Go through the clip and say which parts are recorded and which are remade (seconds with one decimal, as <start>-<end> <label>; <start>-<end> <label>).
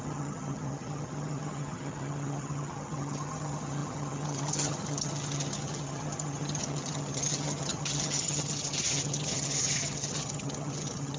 0.0-11.2 remade